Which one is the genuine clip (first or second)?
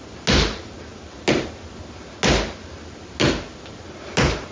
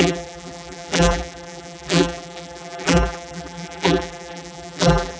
first